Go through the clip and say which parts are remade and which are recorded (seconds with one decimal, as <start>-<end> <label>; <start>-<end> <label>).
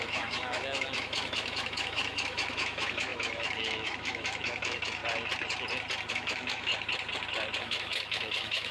0.0-5.0 remade; 5.0-6.1 recorded; 6.1-6.7 remade; 6.7-7.6 recorded; 7.6-8.7 remade